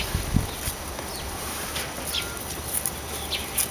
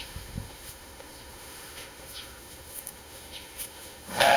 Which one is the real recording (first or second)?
first